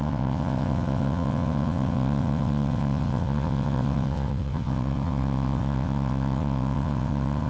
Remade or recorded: remade